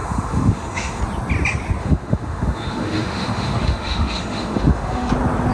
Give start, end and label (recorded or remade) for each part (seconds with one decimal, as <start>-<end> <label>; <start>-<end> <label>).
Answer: 0.0-1.0 remade; 1.0-1.8 recorded; 1.8-5.1 remade; 5.1-5.5 recorded